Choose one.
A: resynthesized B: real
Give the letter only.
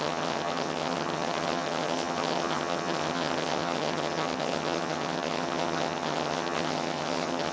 A